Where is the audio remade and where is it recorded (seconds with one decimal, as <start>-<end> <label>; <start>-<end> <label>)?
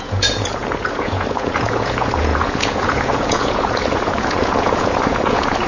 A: 0.0-5.7 remade